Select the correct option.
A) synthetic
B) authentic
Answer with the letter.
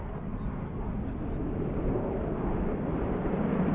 B